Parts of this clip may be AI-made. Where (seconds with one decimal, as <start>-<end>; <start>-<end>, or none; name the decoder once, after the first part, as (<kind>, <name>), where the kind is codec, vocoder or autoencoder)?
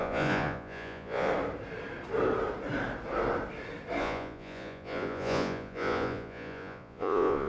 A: 0.0-1.3 (vocoder, Vocos); 4.0-7.5